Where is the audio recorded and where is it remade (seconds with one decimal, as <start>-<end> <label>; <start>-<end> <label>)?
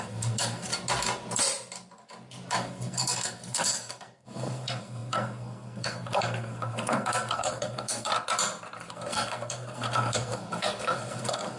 0.0-0.7 remade; 0.7-2.5 recorded; 2.5-8.1 remade; 8.1-8.9 recorded; 8.9-11.6 remade